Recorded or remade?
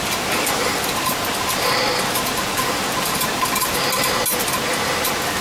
recorded